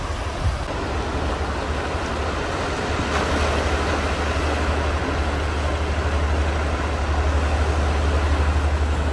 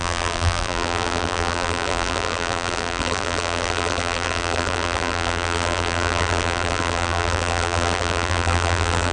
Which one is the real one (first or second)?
first